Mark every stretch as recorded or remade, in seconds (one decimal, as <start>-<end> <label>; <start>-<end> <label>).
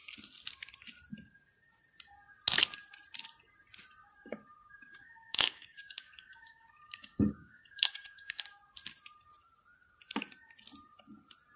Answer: 0.0-4.6 recorded; 4.6-8.4 remade; 8.4-11.6 recorded